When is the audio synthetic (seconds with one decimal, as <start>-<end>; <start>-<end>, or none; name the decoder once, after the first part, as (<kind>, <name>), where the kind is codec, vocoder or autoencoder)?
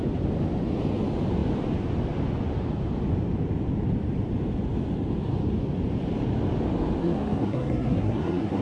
7.0-8.6 (codec, SNAC)